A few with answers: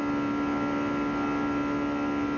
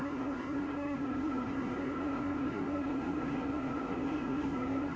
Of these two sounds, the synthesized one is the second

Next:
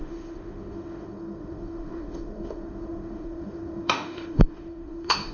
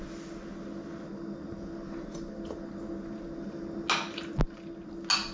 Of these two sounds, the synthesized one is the first